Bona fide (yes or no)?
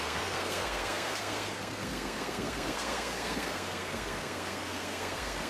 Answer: no